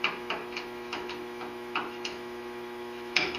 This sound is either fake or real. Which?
fake